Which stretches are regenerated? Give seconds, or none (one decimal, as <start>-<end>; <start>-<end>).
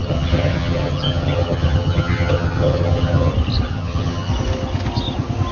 0.0-3.3; 3.7-4.3